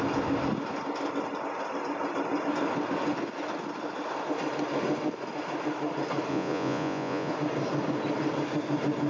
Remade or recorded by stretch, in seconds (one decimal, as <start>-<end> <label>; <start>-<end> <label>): 0.0-6.3 recorded; 6.3-7.3 remade; 7.3-9.1 recorded